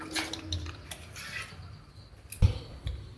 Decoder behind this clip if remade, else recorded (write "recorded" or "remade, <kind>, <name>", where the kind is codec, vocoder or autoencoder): recorded